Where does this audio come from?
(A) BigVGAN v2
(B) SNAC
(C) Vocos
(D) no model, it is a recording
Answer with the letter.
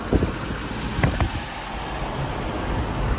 D